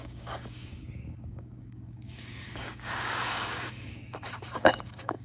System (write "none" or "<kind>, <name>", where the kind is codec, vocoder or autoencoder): codec, DAC